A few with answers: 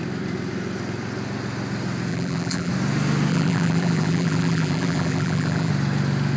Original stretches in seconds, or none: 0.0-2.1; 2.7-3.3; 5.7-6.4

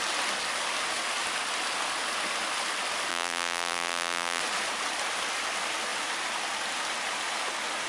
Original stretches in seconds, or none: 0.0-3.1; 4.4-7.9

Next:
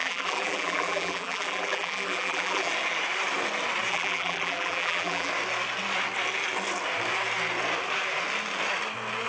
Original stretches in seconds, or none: 2.7-3.9; 5.3-9.3

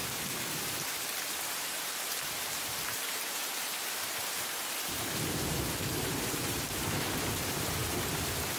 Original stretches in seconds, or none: none

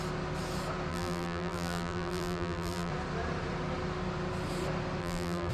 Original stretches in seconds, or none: 0.0-0.9; 2.9-5.0

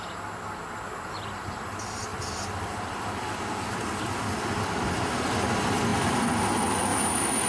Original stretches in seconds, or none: 0.0-2.1; 5.1-5.9; 6.4-6.9

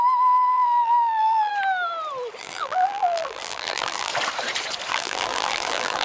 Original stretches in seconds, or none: 1.5-2.4; 4.1-4.9

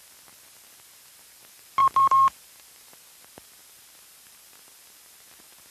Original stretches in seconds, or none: 0.0-1.8; 3.0-5.7